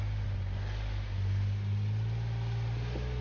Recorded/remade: recorded